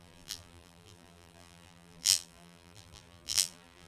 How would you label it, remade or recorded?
remade